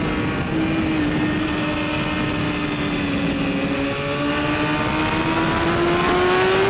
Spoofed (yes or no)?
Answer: no